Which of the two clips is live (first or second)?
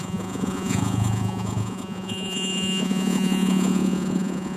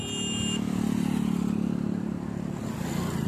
second